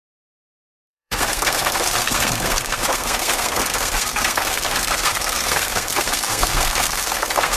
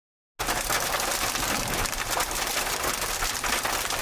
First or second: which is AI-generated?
first